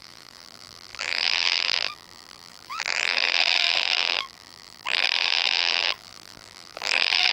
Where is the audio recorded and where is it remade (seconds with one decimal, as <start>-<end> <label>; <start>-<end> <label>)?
0.0-7.3 remade